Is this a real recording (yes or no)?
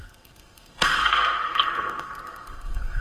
no